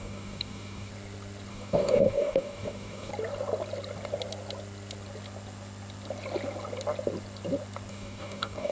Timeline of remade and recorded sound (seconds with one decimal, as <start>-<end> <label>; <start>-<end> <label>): 0.0-0.9 remade; 0.9-1.5 recorded; 1.5-3.1 remade; 3.1-7.9 recorded; 7.9-8.7 remade